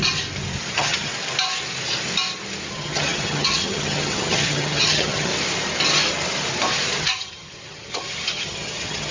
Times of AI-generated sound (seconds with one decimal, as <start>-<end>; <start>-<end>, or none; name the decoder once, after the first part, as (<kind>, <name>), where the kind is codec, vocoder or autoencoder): 0.7-1.1 (vocoder, HiFi-GAN); 2.7-5.3; 7.0-9.1